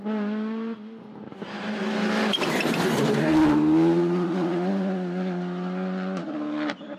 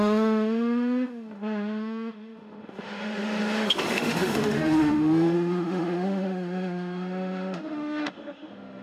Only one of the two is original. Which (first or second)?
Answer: first